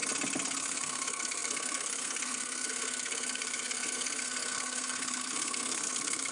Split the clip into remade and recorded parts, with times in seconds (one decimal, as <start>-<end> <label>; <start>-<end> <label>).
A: 0.0-0.6 recorded; 0.6-6.3 remade